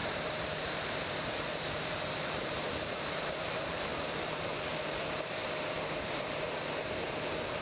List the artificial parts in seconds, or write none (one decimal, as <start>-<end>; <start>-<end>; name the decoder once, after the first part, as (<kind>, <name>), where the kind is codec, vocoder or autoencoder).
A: 0.0-5.4 (vocoder, BigVGAN v2); 6.0-7.6